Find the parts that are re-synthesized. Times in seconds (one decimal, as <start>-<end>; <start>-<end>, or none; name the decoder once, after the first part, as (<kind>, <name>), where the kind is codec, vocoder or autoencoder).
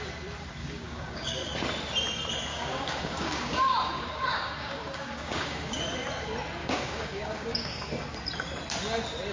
0.6-1.5 (codec, DAC); 2.5-5.8; 6.6-7.9